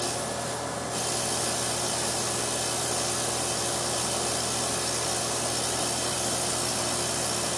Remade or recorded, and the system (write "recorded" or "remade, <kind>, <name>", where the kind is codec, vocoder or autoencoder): recorded